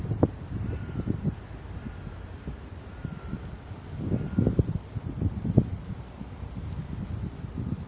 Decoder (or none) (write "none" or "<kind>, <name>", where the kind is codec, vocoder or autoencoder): none